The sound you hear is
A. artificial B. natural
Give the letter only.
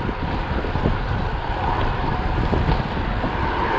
B